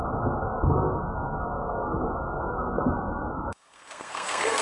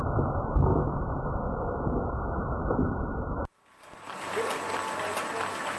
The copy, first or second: first